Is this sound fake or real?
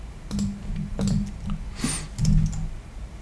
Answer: real